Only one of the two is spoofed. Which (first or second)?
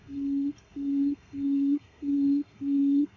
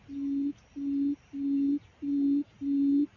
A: first